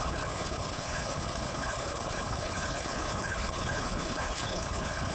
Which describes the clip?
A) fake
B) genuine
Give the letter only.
A